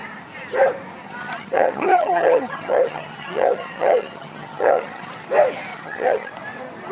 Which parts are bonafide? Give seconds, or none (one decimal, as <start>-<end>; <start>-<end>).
0.0-1.0; 5.1-5.7; 6.3-6.9